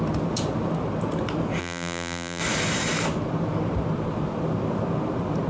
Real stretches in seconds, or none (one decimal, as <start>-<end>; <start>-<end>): 0.0-1.6; 2.4-5.5